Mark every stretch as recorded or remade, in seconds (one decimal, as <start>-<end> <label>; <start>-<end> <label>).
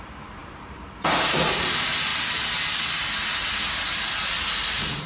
0.0-2.1 remade; 2.1-3.3 recorded; 3.3-5.1 remade